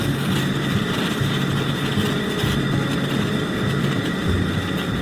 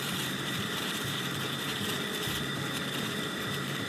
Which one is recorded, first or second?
first